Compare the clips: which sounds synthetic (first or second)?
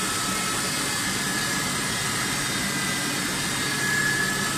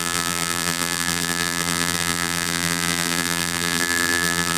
second